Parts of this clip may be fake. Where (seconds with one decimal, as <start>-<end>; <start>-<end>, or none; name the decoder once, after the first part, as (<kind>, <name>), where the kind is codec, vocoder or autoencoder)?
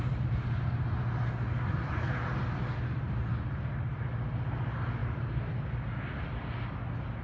none